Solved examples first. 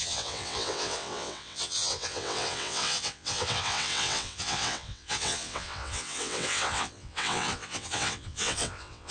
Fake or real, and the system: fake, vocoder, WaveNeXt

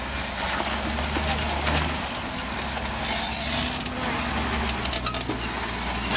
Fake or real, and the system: real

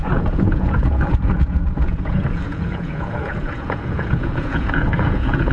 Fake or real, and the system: fake, vocoder, Vocos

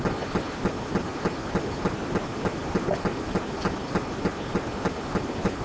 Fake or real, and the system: real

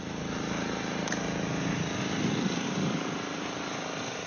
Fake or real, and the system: real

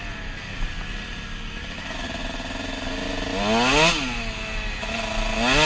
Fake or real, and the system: real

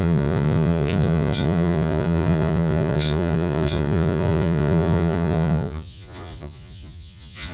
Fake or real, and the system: fake, vocoder, Vocos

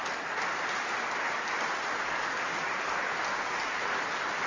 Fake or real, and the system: real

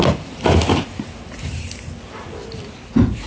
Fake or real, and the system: real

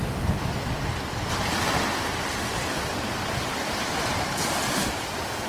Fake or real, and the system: real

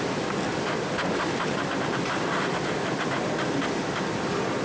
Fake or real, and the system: fake, vocoder, BigVGAN v2